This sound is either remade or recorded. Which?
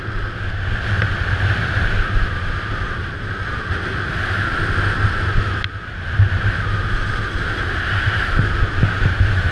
recorded